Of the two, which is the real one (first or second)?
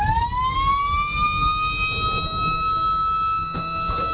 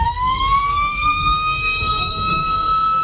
first